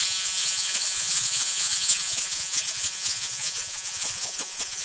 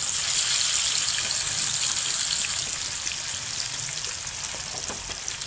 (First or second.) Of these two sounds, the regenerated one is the first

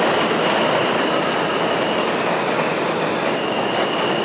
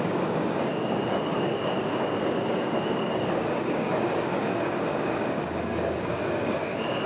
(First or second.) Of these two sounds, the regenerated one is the second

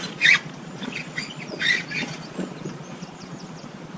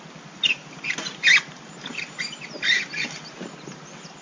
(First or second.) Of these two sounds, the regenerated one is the first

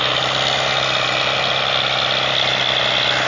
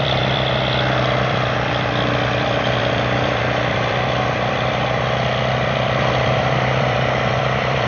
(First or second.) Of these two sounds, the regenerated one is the second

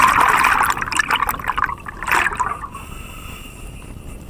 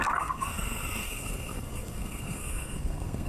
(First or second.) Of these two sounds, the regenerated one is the second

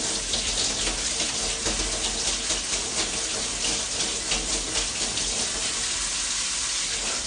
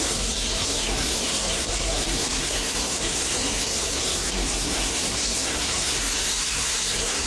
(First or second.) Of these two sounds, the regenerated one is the second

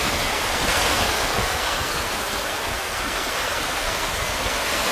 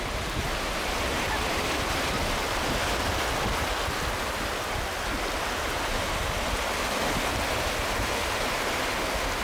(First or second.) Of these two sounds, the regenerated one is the first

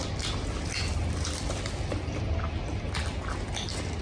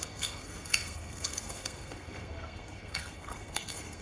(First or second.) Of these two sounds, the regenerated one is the second